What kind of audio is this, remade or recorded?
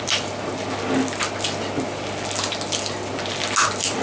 recorded